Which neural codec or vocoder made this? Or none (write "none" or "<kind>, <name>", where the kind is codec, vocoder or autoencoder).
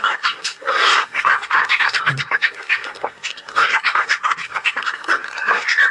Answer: codec, SNAC